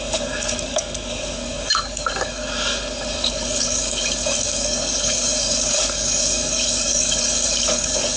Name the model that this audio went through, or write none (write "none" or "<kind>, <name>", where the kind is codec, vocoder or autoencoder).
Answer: codec, DAC